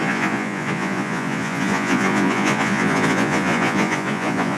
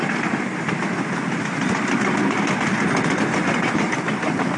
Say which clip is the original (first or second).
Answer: second